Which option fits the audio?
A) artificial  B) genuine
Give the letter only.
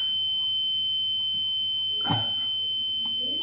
B